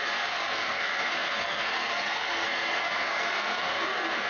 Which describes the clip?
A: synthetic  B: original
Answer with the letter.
A